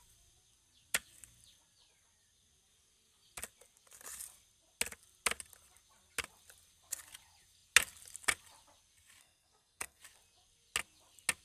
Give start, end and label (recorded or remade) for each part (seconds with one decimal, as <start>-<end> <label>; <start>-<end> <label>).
0.0-9.2 recorded; 9.2-10.0 remade; 10.0-11.4 recorded